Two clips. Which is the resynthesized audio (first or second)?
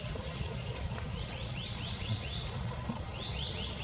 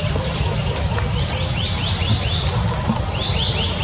first